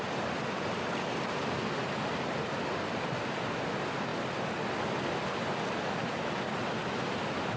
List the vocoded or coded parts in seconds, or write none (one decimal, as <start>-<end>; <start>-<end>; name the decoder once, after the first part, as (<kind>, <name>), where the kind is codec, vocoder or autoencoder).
none